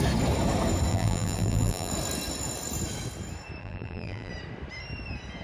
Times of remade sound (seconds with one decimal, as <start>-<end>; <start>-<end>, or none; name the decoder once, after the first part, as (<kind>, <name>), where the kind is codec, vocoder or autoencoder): 0.9-1.9 (vocoder, BigVGAN v2); 3.6-4.3